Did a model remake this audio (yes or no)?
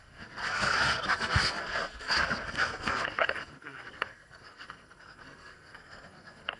yes